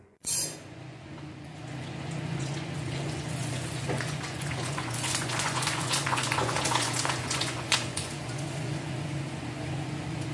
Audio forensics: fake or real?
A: fake